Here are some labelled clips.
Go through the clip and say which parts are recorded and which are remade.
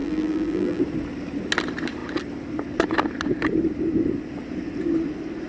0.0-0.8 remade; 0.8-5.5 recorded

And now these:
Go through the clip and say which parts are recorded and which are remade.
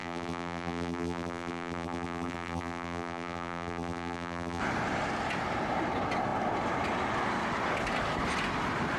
0.0-4.6 remade; 4.6-9.0 recorded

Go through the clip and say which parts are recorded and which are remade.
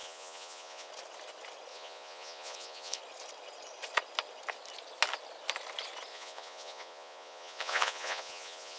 0.0-0.9 remade; 0.9-1.7 recorded; 1.7-3.0 remade; 3.0-6.1 recorded; 6.1-8.8 remade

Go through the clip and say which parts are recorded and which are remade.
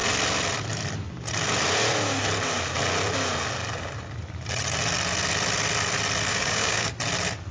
0.0-6.3 recorded; 6.3-6.9 remade; 6.9-7.5 recorded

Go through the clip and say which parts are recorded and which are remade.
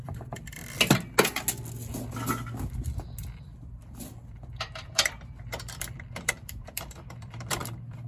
0.0-0.6 remade; 0.6-3.4 recorded; 3.4-8.1 remade